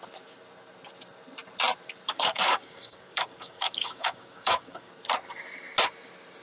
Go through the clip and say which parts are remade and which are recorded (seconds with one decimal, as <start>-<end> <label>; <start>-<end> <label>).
0.0-2.1 recorded; 2.1-4.9 remade; 4.9-6.4 recorded

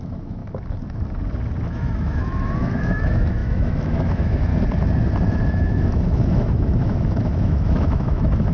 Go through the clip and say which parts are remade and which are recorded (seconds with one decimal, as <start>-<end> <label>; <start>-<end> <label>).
0.0-0.4 remade; 0.4-1.7 recorded; 1.7-4.5 remade; 4.5-5.5 recorded; 5.5-8.5 remade